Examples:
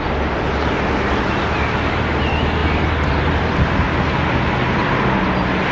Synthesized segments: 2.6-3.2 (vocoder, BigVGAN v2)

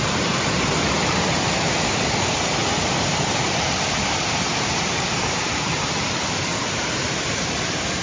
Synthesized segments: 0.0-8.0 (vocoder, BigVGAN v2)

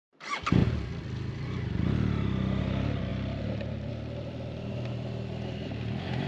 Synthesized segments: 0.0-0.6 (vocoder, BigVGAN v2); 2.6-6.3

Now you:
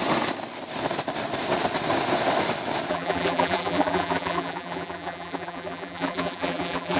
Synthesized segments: 2.9-7.0 (vocoder, BigVGAN v2)

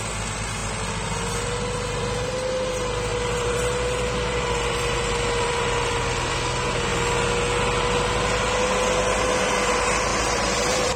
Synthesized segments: 3.1-5.9 (vocoder, BigVGAN v2); 10.1-11.0

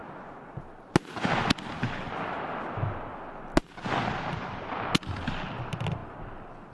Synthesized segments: none

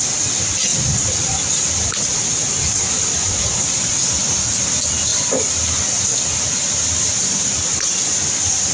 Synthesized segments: 0.7-4.1 (vocoder, BigVGAN v2); 5.1-8.7